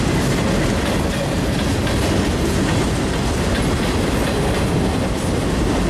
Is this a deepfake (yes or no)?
no